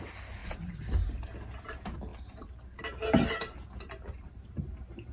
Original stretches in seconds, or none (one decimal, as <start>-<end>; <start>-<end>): 0.0-5.1